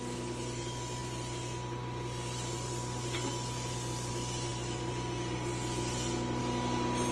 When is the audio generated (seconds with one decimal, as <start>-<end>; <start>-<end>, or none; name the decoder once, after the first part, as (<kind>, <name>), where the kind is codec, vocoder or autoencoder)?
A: none